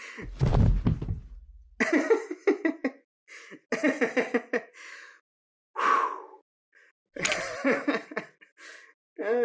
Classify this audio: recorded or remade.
recorded